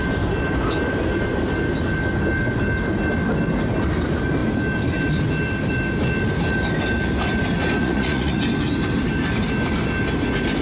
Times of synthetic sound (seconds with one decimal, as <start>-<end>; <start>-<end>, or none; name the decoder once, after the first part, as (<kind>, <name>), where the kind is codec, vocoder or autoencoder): 7.8-8.4 (vocoder, Vocos)